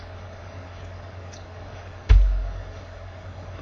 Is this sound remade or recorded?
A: remade